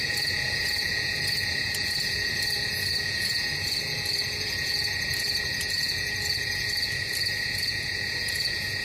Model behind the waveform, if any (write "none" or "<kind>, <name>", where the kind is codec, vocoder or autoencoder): vocoder, Vocos